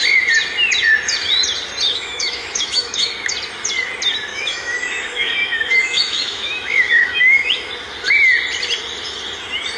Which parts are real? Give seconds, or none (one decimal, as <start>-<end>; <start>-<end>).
0.0-1.9; 3.1-4.3; 7.7-9.8